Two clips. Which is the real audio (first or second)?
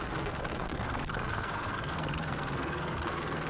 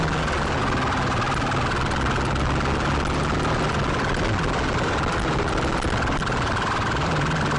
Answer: second